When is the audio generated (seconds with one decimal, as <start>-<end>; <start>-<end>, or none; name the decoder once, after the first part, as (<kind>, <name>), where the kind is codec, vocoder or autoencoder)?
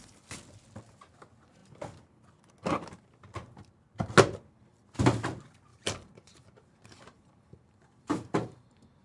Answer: 5.7-9.0 (vocoder, BigVGAN v2)